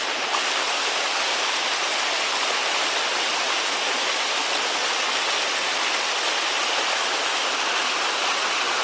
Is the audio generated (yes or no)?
no